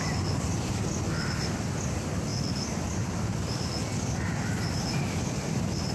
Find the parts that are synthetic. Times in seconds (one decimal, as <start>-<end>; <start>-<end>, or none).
2.3-5.5